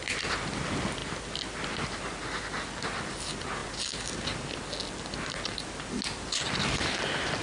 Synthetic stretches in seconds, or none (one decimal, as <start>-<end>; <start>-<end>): none